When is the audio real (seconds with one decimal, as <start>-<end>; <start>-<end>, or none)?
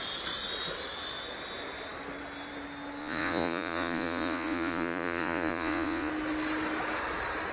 0.0-3.0; 6.1-7.5